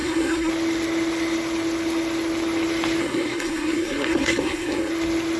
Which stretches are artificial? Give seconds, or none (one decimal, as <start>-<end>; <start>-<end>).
0.0-0.5; 3.0-4.9